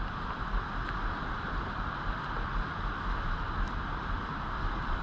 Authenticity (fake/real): real